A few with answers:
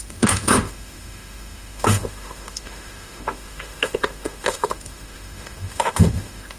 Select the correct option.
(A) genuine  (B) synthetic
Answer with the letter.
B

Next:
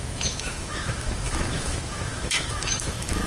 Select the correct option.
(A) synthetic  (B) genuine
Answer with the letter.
A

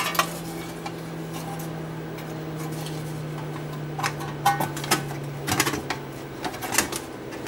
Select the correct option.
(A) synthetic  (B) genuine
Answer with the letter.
B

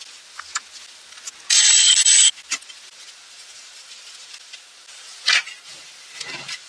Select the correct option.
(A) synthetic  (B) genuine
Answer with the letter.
B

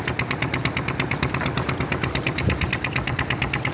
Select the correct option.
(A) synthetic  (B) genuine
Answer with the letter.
B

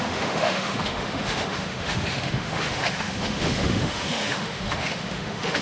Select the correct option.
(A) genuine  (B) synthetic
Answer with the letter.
B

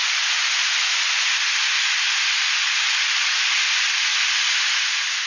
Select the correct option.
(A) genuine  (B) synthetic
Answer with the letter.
A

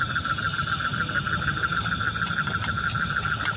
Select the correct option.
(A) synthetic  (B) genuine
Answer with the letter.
B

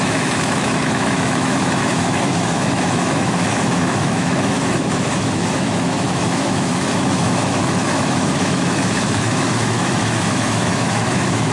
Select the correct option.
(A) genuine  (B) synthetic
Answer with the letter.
B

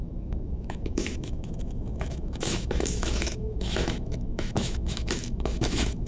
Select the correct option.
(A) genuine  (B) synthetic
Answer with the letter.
B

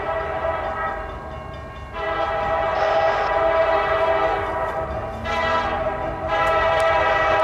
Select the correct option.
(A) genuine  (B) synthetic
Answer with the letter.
A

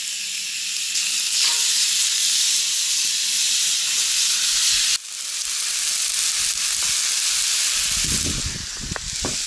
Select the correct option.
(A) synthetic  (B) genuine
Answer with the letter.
B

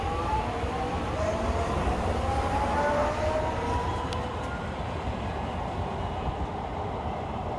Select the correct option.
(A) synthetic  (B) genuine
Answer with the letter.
B